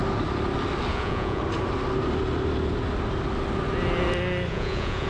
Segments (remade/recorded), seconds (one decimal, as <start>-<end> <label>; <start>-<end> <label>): 0.0-0.9 recorded; 0.9-1.4 remade; 1.4-4.5 recorded; 4.5-5.1 remade